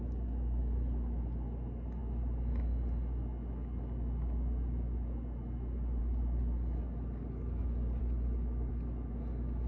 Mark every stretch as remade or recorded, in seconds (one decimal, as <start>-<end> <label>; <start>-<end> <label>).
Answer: 0.0-9.7 recorded